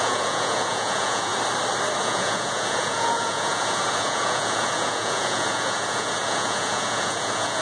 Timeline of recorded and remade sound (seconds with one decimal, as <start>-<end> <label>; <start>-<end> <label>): 0.0-1.3 remade; 1.3-2.0 recorded; 2.0-7.6 remade